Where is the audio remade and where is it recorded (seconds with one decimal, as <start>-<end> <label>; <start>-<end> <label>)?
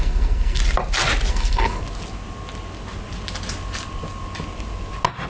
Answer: 0.0-0.6 remade; 0.6-1.3 recorded; 1.3-1.8 remade; 1.8-5.3 recorded